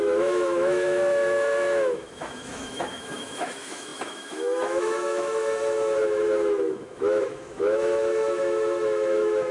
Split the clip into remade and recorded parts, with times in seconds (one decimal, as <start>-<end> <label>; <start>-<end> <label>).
0.0-9.5 remade